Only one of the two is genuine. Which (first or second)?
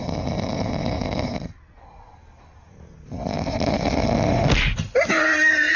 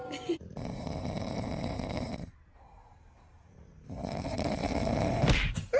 first